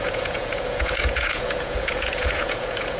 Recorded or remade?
remade